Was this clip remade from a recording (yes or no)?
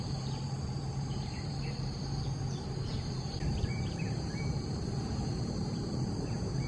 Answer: yes